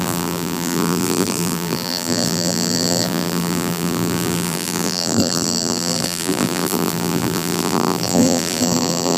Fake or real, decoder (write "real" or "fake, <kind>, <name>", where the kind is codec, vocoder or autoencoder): fake, vocoder, BigVGAN v2